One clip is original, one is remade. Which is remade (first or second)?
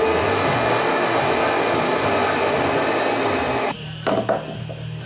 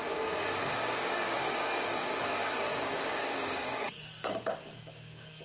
second